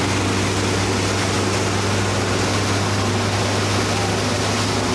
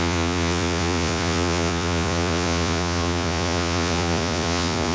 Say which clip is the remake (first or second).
second